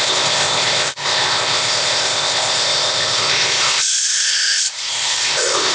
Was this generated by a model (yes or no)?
yes